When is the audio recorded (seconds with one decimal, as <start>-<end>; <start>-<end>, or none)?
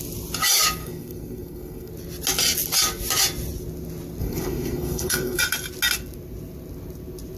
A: 0.0-0.8; 1.9-4.2; 5.4-7.4